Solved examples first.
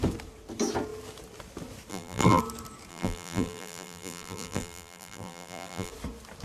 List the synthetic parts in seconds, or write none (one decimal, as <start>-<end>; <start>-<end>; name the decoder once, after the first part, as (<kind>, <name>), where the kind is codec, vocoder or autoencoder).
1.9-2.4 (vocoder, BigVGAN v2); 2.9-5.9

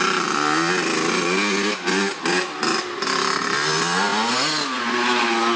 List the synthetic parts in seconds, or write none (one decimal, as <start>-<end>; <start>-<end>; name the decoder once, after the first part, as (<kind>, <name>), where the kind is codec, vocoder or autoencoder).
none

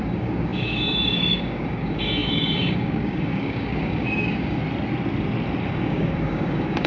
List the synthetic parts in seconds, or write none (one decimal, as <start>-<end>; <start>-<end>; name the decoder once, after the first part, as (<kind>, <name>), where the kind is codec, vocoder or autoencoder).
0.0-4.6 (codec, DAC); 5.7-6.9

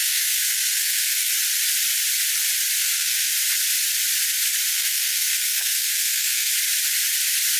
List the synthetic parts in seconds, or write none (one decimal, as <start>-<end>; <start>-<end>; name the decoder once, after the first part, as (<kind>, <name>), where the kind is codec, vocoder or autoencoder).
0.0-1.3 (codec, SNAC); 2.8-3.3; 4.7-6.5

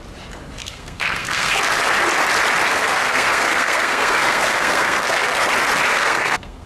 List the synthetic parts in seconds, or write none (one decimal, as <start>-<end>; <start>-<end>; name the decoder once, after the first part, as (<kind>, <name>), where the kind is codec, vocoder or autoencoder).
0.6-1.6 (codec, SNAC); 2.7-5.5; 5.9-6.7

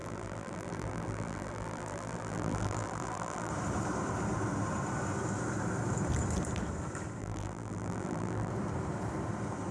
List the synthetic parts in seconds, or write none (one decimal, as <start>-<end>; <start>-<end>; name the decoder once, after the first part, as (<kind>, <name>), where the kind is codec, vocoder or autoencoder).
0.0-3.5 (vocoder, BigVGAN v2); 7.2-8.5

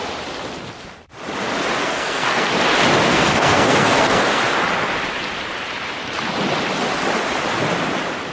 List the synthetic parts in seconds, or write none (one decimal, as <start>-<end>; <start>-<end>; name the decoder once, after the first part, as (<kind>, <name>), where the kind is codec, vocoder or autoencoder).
1.8-2.5 (codec, SNAC); 3.1-4.4